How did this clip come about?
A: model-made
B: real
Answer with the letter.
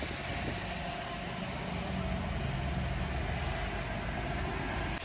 B